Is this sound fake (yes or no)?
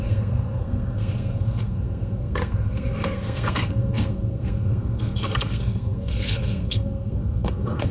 yes